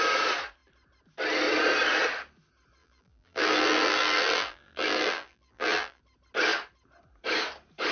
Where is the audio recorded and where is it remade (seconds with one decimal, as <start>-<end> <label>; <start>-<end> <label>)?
0.0-2.8 recorded; 2.8-6.0 remade; 6.0-7.9 recorded